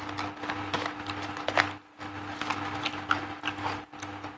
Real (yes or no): yes